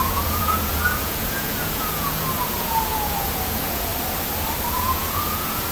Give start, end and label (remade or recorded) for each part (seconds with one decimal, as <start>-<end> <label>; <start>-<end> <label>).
0.0-3.9 remade; 3.9-4.7 recorded; 4.7-5.7 remade

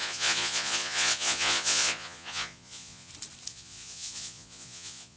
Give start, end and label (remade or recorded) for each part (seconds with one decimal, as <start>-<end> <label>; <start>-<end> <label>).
0.0-3.1 remade; 3.1-3.5 recorded; 3.5-5.2 remade

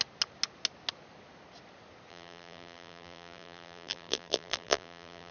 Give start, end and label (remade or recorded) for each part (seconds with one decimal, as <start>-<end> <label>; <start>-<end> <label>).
0.0-2.1 recorded; 2.1-5.3 remade

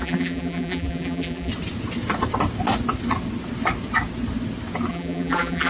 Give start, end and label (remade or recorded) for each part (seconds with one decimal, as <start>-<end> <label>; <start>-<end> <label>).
0.0-1.5 remade; 1.5-4.9 recorded; 4.9-5.7 remade

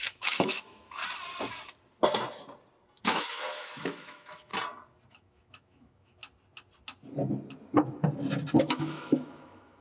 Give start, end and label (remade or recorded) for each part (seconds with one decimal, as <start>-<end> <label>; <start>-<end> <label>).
0.0-1.0 remade; 1.0-3.0 recorded; 3.0-4.5 remade; 4.5-5.1 recorded; 5.1-6.2 remade; 6.2-8.6 recorded; 8.6-9.8 remade

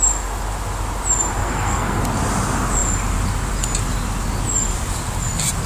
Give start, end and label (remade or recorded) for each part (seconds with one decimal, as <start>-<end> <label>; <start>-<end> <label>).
0.0-1.4 recorded; 1.4-2.0 remade; 2.0-5.7 recorded

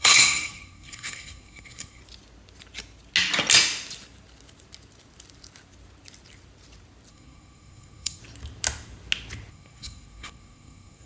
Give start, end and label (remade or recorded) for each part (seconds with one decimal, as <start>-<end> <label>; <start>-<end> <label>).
0.0-2.0 remade; 2.0-7.1 recorded; 7.1-8.2 remade; 8.2-9.5 recorded; 9.5-11.1 remade